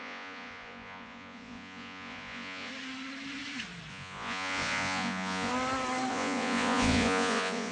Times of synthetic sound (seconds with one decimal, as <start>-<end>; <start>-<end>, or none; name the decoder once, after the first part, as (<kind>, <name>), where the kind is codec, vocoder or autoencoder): 0.0-2.7 (vocoder, Vocos); 3.9-5.5; 6.1-7.7